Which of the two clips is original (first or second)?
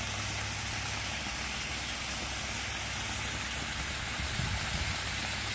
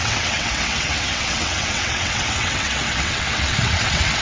first